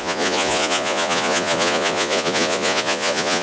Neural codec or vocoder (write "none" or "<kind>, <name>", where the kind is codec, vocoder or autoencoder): vocoder, Vocos